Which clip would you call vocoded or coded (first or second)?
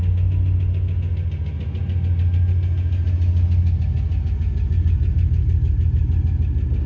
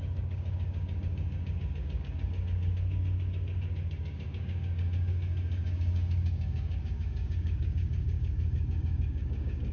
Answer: second